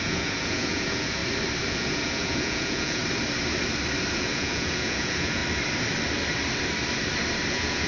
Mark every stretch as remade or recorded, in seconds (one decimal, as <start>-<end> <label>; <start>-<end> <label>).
0.0-1.2 remade; 1.2-1.7 recorded; 1.7-3.0 remade; 3.0-4.1 recorded; 4.1-5.4 remade; 5.4-7.5 recorded; 7.5-7.9 remade